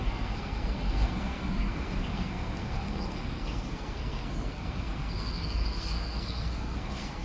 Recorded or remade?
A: remade